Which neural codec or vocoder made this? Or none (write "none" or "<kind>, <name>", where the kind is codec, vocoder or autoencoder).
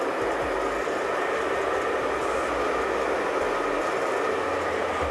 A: none